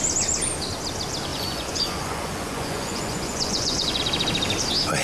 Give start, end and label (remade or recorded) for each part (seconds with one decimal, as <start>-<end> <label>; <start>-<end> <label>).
0.0-1.3 recorded; 1.3-4.0 remade; 4.0-5.0 recorded